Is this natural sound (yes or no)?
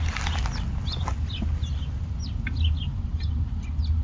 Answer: yes